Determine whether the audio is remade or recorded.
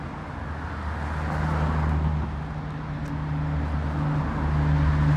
recorded